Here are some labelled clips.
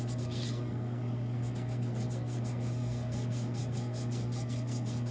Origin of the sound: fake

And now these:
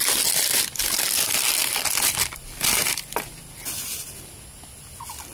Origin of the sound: real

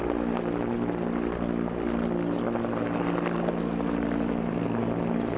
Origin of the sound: real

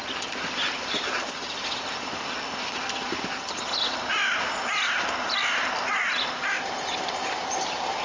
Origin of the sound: real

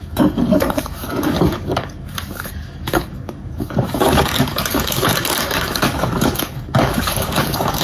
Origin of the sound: fake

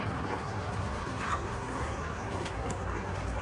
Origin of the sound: fake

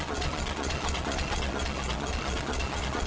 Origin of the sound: fake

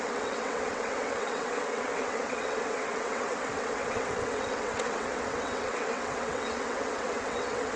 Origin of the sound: fake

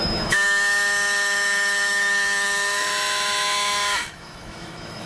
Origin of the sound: fake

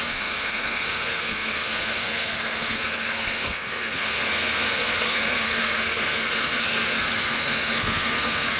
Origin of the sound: fake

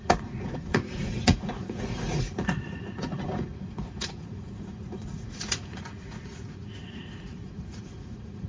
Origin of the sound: fake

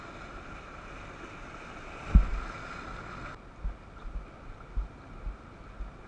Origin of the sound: real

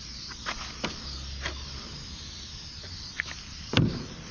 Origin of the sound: real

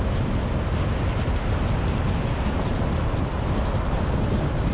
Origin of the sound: real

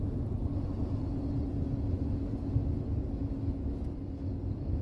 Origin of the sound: real